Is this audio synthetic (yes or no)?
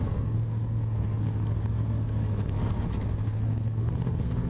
yes